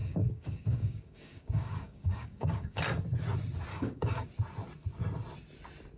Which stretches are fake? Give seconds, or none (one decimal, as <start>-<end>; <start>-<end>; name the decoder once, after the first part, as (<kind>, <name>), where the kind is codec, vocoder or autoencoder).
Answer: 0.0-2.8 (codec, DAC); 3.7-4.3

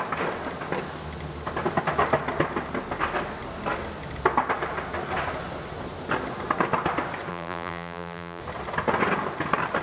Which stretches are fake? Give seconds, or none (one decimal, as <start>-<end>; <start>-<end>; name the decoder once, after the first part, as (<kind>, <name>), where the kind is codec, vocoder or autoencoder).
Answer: 7.3-8.4 (vocoder, BigVGAN v2)

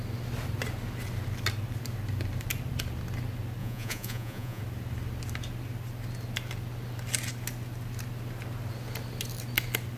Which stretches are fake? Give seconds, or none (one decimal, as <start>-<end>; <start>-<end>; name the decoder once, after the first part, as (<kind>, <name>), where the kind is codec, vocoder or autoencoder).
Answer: 3.6-4.6 (vocoder, Vocos)

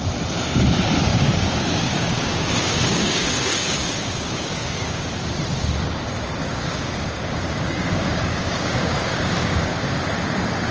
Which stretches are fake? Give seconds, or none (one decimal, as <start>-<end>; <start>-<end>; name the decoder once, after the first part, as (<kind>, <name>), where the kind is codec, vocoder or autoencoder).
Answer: 1.1-5.0 (codec, DAC); 6.4-9.8